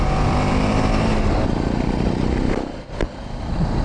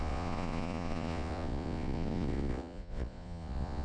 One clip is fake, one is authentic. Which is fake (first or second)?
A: second